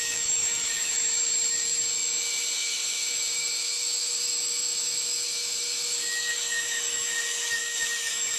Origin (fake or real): fake